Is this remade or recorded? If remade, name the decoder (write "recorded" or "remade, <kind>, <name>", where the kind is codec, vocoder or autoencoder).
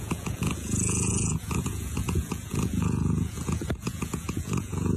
remade, vocoder, Vocos